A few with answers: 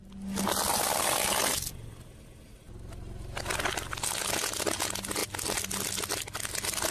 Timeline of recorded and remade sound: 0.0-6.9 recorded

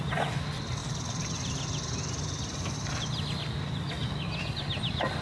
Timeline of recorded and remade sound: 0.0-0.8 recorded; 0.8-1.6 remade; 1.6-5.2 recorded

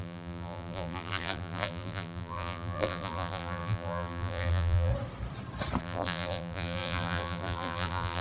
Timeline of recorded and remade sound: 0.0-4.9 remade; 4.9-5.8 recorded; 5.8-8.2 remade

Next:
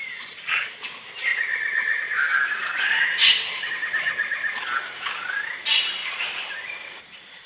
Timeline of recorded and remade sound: 0.0-6.0 recorded; 6.0-7.0 remade; 7.0-7.5 recorded

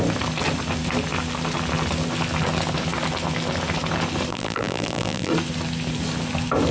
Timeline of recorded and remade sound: 0.0-4.3 recorded; 4.3-5.3 remade; 5.3-6.7 recorded

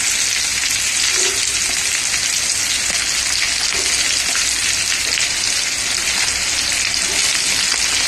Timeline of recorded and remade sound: 0.0-8.1 recorded